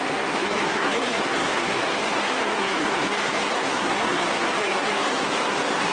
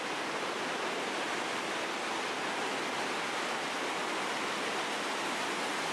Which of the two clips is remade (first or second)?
first